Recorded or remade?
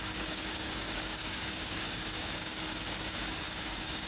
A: remade